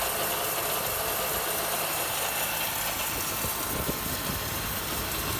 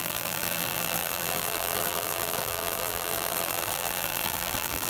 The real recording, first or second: first